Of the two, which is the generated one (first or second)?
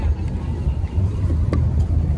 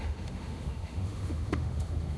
second